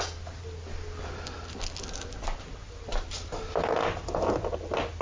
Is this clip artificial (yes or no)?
no